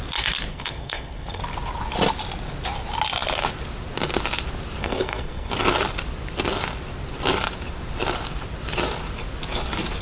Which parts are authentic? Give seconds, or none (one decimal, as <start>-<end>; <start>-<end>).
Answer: 0.0-0.5; 1.4-4.8; 5.5-10.0